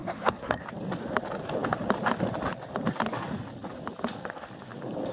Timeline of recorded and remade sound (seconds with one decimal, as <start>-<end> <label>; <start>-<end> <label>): 0.0-0.6 remade; 0.6-5.1 recorded